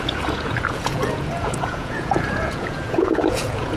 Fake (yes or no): yes